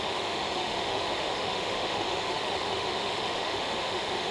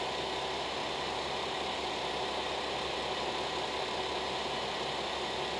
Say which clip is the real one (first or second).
second